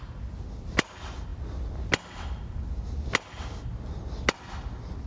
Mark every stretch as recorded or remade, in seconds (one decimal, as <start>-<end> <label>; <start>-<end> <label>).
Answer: 0.0-5.1 recorded